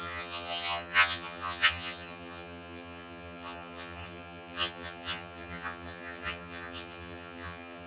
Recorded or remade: remade